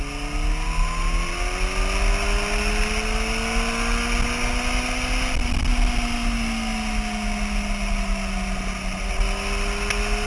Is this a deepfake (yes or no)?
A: no